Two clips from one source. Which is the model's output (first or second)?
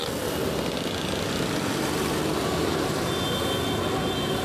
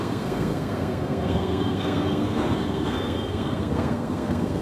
second